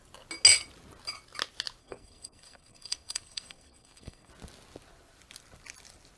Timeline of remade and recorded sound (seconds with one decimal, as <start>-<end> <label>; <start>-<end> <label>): 0.0-1.8 recorded; 1.8-4.3 remade; 4.3-6.2 recorded